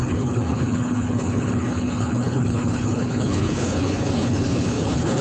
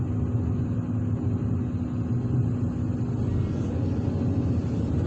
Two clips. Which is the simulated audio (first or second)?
first